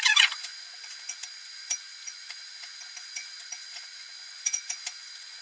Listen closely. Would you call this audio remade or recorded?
remade